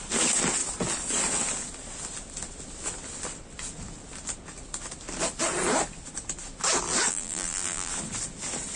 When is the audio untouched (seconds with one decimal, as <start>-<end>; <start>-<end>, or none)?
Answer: 0.0-7.1; 7.9-8.8

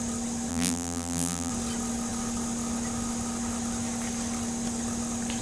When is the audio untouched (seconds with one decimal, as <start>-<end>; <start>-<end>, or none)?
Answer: 0.0-0.5; 1.5-5.4

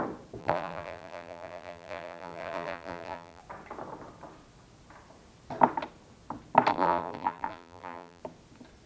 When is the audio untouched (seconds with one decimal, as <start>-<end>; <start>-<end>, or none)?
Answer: 0.0-0.4; 3.4-6.7; 8.2-8.9

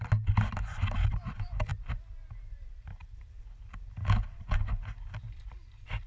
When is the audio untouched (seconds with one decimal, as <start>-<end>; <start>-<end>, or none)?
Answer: 0.0-6.1

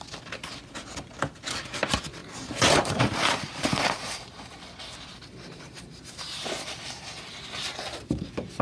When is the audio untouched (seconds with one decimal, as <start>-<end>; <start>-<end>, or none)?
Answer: 0.0-2.2; 4.5-5.1; 7.2-8.6

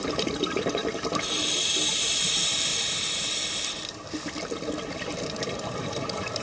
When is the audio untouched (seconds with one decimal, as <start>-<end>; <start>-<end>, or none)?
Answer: 0.8-1.9; 2.7-5.4